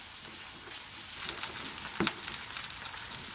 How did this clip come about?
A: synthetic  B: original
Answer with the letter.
B